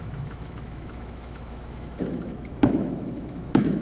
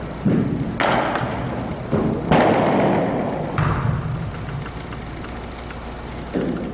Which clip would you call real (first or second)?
second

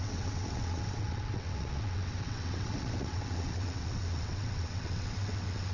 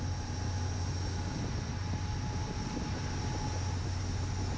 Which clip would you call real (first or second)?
second